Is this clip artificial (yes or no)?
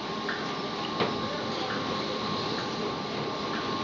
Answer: no